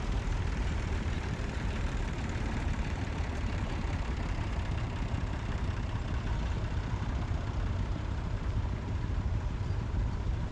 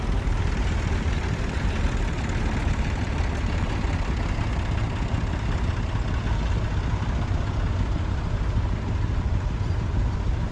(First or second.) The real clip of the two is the second